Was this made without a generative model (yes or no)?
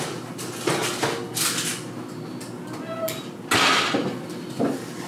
yes